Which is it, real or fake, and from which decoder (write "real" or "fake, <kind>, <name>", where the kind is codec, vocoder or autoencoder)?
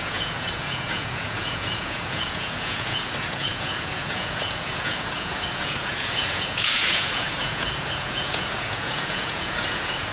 fake, vocoder, Vocos